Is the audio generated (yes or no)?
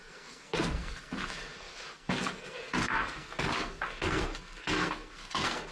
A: yes